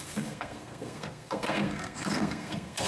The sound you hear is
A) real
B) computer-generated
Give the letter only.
B